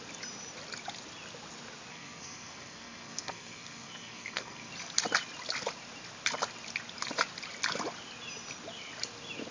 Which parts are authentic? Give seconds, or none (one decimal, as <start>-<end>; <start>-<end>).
0.0-1.9; 4.7-9.5